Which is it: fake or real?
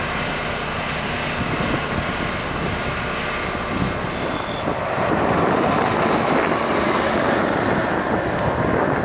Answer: real